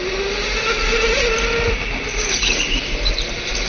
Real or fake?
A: real